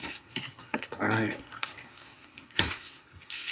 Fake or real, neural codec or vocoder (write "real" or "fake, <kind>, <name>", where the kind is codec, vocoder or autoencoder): fake, codec, SNAC